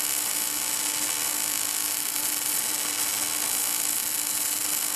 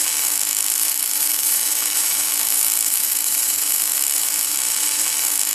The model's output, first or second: second